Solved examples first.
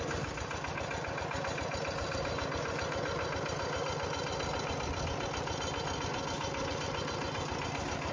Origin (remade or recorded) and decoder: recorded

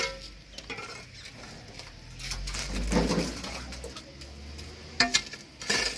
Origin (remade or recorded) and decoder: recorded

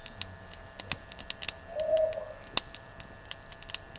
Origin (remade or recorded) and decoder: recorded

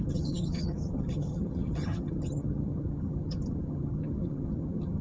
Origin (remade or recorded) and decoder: remade, vocoder, HiFi-GAN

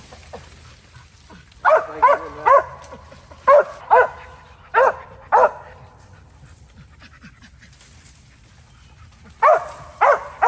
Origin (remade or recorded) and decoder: recorded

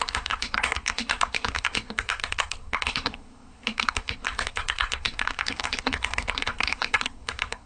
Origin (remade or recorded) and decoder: remade, codec, SNAC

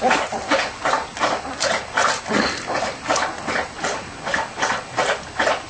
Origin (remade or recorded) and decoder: recorded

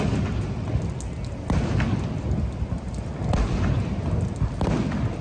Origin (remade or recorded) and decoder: recorded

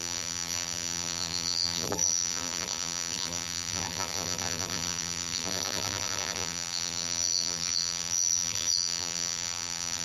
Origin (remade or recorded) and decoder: remade, vocoder, BigVGAN v2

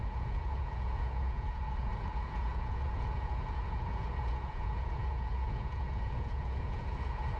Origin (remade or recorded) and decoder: remade, vocoder, Vocos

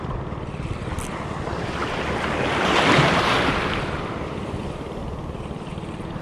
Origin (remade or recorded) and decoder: recorded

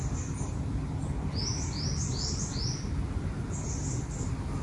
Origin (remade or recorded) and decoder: recorded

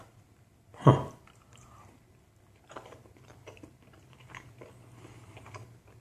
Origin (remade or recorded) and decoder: remade, vocoder, BigVGAN v2